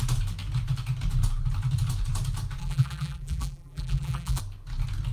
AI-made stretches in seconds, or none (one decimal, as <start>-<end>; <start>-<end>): 2.6-4.4

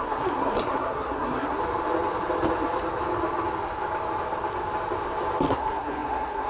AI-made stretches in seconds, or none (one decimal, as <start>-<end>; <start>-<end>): 0.0-1.6; 5.5-6.5

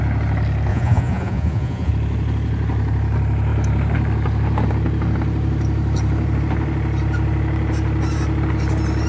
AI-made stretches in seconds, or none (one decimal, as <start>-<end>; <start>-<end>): 0.7-1.9

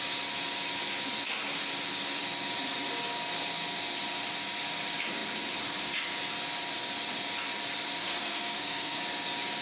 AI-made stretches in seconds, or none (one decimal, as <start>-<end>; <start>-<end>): 8.0-9.0

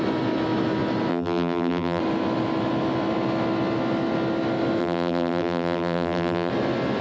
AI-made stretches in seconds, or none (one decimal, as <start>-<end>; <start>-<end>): 1.1-2.0; 4.8-6.5

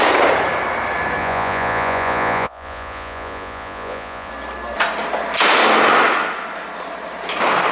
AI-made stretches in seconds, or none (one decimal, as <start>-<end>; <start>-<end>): 1.2-4.3